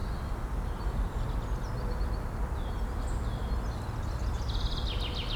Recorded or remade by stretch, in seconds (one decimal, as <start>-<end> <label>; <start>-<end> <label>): 0.0-5.4 recorded